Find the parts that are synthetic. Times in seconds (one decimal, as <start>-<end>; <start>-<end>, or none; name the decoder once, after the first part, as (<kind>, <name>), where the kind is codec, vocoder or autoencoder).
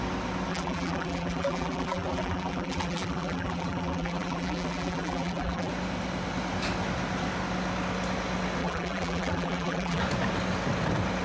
0.5-5.7 (vocoder, BigVGAN v2); 8.6-10.0